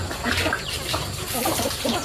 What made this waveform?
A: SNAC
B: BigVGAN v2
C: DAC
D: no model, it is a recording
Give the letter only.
B